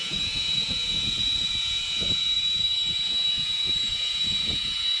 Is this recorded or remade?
remade